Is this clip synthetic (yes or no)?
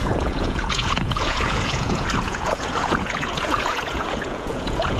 yes